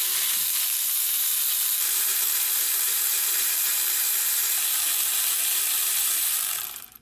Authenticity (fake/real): fake